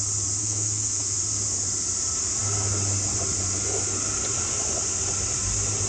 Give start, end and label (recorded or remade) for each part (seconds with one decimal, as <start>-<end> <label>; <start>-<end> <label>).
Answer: 0.0-0.4 recorded; 0.4-1.2 remade; 1.2-5.9 recorded